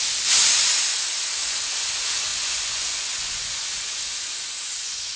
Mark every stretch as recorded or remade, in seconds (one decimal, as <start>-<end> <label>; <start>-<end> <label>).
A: 0.0-1.4 recorded; 1.4-1.9 remade; 1.9-2.3 recorded; 2.3-5.2 remade